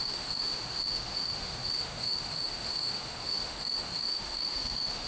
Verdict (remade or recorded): remade